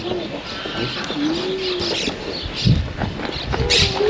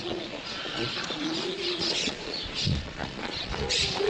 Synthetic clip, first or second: second